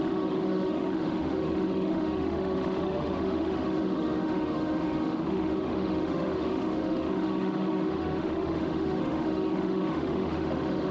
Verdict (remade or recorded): remade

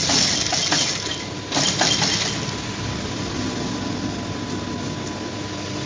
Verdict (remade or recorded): recorded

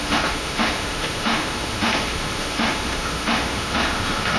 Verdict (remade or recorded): remade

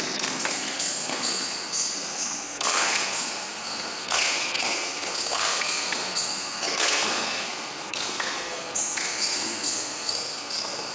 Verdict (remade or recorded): remade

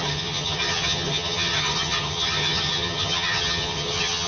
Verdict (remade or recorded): remade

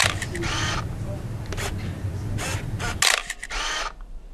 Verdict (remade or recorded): recorded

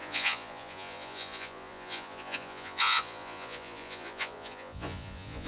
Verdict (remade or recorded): remade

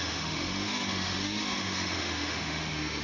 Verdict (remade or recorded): remade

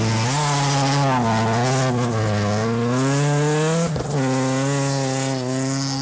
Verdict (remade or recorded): recorded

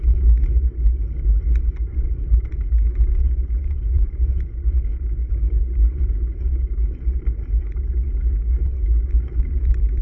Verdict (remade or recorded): remade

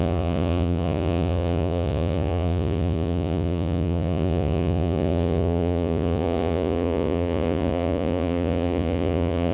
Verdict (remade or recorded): remade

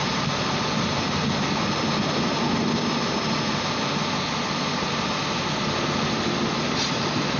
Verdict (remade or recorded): recorded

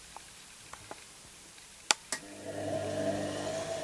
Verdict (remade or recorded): recorded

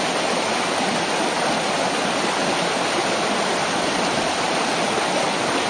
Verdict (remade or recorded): recorded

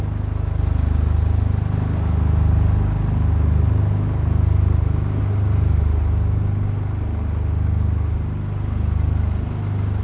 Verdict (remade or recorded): recorded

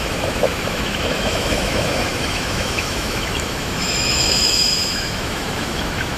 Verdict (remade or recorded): remade